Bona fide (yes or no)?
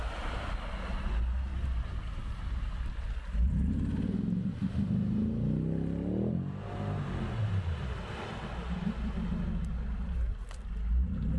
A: yes